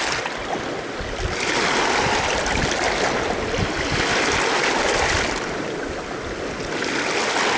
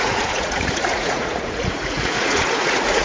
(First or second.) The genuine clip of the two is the first